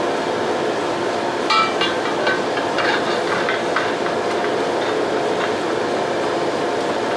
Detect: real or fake real